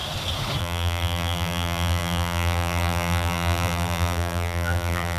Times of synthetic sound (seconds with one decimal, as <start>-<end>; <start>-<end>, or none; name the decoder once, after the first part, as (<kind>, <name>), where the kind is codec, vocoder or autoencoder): 0.6-5.2 (vocoder, BigVGAN v2)